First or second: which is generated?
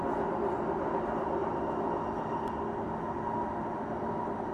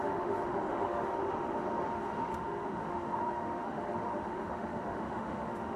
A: second